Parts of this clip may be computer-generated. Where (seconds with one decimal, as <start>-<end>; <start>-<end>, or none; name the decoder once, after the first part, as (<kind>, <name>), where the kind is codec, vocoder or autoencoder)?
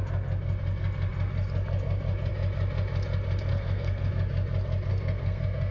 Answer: 3.5-4.1 (codec, SNAC); 4.9-5.7